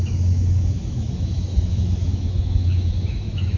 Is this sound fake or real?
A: fake